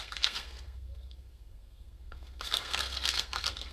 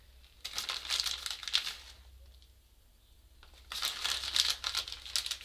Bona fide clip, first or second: second